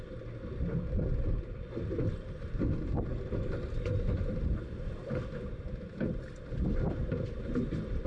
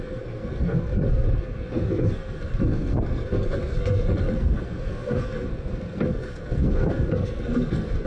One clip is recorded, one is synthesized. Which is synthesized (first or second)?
second